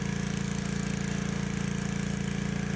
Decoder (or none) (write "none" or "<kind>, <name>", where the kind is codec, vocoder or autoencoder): none